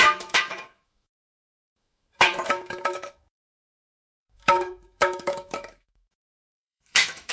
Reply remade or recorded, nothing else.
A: remade